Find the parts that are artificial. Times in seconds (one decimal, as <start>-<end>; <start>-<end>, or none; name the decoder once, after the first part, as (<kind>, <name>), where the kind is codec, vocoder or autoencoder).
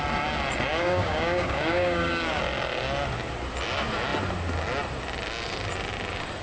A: 0.7-2.4 (codec, DAC)